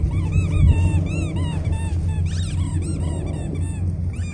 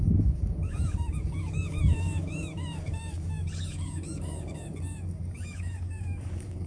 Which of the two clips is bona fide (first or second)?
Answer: first